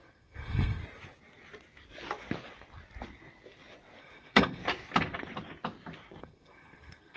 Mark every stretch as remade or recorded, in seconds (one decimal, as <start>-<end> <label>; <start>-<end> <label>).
0.0-0.8 remade; 0.8-4.0 recorded; 4.0-4.6 remade; 4.6-6.2 recorded; 6.2-7.2 remade

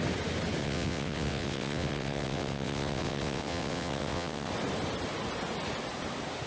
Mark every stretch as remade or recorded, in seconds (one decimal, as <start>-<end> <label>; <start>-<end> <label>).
0.0-0.6 recorded; 0.6-4.5 remade; 4.5-6.5 recorded

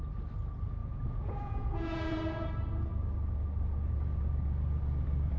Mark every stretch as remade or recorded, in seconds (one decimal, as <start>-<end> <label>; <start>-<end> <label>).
0.0-0.8 recorded; 0.8-2.5 remade; 2.5-5.4 recorded

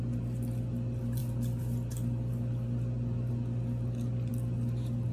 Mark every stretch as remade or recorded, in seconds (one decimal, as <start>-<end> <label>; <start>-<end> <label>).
0.0-5.1 recorded

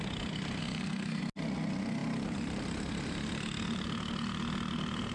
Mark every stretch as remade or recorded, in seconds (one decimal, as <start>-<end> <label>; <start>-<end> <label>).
0.0-0.6 recorded; 0.6-1.2 remade; 1.2-5.1 recorded

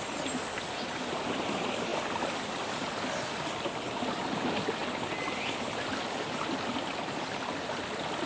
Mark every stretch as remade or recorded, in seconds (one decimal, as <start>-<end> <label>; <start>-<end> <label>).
0.0-8.3 recorded

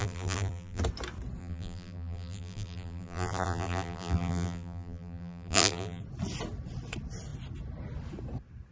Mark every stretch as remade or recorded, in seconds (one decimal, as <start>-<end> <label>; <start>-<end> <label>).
0.0-0.8 remade; 0.8-1.4 recorded; 1.4-6.0 remade; 6.0-8.7 recorded